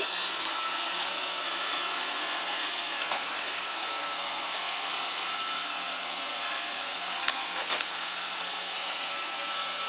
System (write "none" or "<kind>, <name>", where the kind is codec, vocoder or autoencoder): codec, SNAC